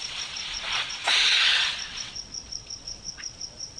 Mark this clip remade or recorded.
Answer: remade